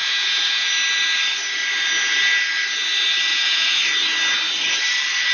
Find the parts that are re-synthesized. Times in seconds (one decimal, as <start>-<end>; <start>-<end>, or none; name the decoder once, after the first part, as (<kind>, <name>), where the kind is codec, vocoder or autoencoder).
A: 0.0-0.7 (vocoder, Vocos); 3.3-3.8